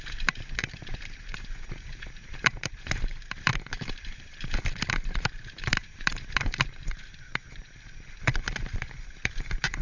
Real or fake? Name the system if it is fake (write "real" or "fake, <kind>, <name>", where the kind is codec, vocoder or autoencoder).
fake, vocoder, BigVGAN v2